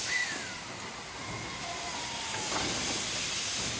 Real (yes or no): yes